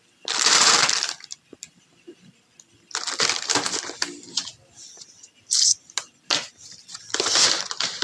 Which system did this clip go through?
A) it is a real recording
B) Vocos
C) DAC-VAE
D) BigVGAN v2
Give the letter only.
A